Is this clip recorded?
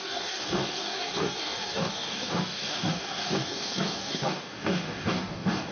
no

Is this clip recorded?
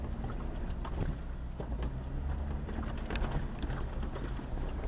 yes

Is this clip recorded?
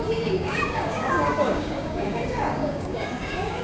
no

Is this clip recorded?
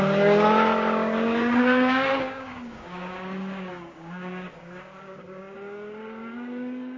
no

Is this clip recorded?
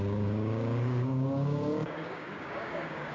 no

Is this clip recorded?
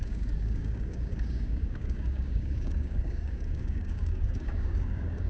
no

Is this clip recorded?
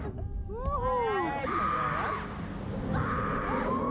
yes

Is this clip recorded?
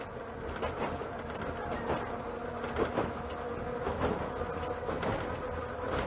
yes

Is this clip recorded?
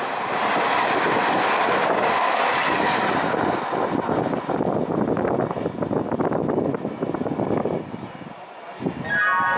yes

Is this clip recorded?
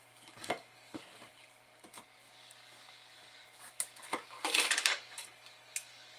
no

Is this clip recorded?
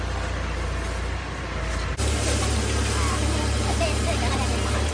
yes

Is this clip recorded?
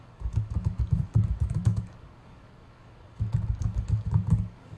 no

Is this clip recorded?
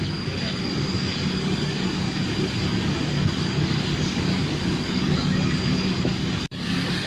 no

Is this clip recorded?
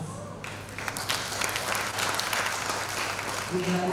yes